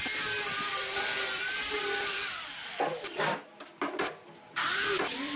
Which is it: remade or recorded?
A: recorded